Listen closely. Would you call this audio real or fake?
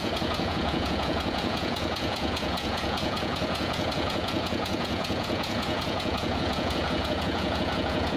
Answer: fake